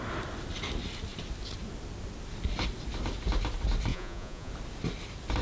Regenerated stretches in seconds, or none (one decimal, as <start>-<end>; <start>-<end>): 3.9-4.5